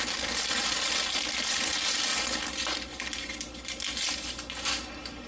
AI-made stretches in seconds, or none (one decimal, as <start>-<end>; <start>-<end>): none